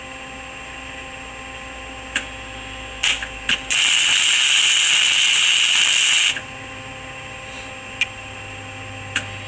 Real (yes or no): yes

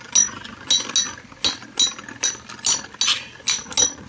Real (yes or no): yes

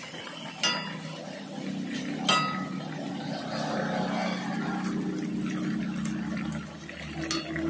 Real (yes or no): yes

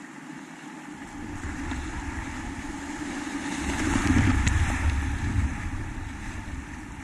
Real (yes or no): yes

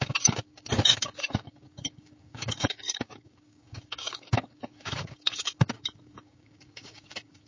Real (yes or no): no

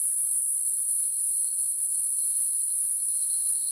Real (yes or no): no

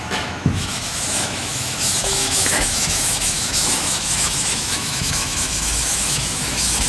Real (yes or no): no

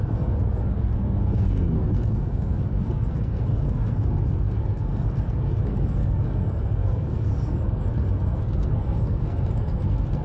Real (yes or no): no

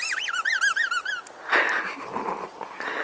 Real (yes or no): yes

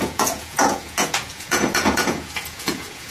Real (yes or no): no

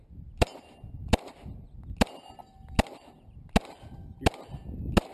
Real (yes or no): yes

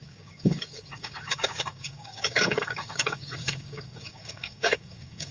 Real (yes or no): no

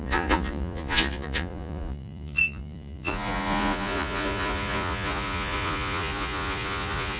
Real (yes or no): no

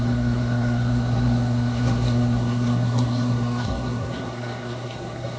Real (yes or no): no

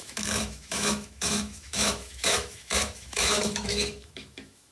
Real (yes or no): no